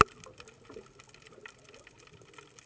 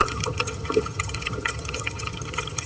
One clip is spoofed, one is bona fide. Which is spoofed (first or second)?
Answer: second